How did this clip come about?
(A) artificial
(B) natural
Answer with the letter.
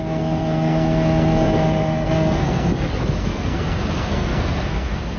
A